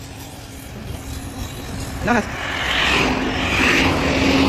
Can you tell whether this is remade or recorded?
recorded